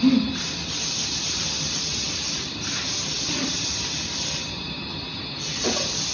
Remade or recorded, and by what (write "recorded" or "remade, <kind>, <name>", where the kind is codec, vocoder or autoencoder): recorded